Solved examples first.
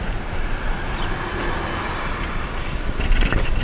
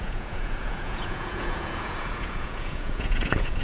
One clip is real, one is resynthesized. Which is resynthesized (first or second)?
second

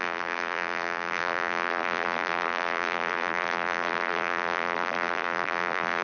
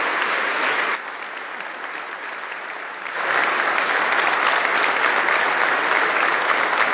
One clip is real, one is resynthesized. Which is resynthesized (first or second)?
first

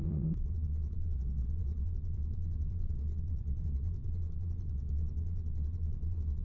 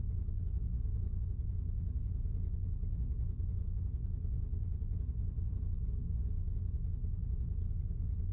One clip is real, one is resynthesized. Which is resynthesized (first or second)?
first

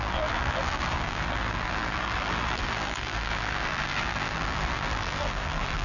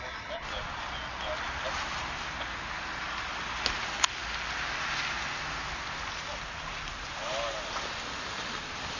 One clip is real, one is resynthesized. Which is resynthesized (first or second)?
first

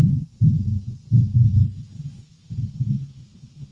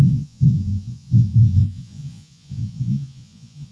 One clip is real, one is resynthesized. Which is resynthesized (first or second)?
second